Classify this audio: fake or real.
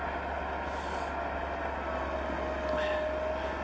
real